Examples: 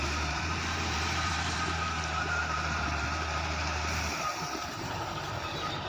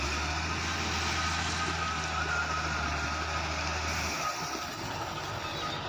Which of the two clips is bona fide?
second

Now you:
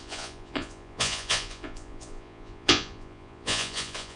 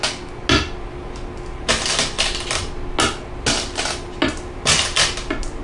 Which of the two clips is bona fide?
second